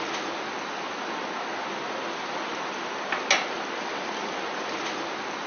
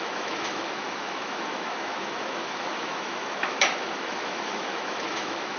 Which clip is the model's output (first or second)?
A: second